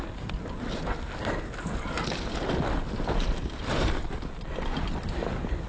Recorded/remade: recorded